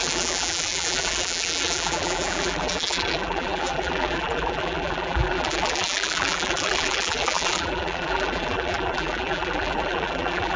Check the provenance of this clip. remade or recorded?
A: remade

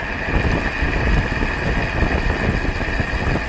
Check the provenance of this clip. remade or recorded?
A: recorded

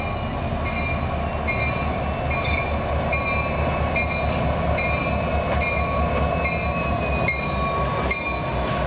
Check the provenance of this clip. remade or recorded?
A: recorded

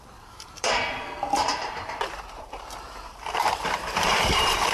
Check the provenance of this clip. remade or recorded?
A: remade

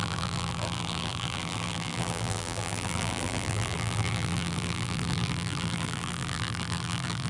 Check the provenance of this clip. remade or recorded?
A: remade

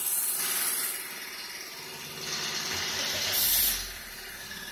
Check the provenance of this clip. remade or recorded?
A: recorded